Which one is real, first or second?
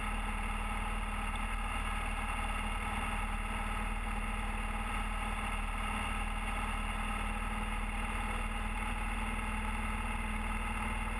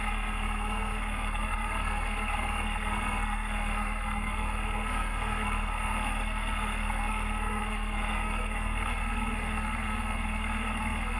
first